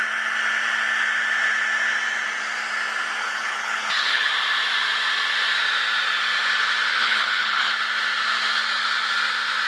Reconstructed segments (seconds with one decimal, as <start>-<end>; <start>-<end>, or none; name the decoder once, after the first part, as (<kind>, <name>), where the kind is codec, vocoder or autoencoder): 3.2-4.3 (codec, HILCodec); 6.9-7.7

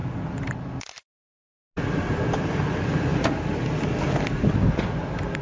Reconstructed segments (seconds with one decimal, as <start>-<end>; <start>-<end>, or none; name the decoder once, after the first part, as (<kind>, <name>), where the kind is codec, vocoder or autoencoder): none

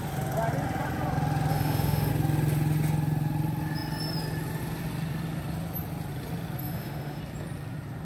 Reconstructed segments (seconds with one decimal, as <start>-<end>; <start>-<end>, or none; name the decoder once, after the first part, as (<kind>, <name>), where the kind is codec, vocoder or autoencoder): 1.5-2.1 (autoencoder, DAC-VAE); 6.6-7.2

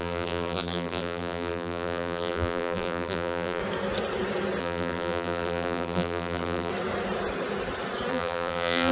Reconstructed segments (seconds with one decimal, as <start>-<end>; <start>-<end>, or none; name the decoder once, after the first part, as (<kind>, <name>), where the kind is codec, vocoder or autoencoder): 0.0-3.6 (vocoder, BigVGAN v2); 4.6-6.7; 8.1-8.9

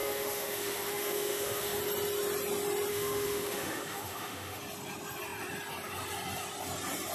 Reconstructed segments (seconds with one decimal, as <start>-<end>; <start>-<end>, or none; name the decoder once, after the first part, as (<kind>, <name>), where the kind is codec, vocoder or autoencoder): 0.0-1.8 (autoencoder, DAC-VAE); 2.9-4.6

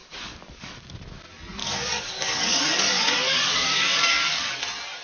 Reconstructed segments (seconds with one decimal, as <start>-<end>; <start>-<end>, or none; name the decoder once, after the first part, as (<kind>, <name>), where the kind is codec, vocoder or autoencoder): 0.0-0.8 (codec, DAC); 1.6-4.6

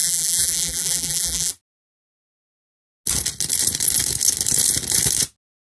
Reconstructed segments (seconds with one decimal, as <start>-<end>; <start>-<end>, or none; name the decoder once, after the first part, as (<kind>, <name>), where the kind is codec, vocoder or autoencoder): 0.0-1.5 (vocoder, BigVGAN v2)